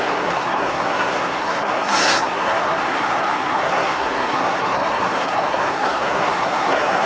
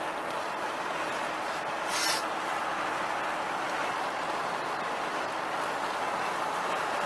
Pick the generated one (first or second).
first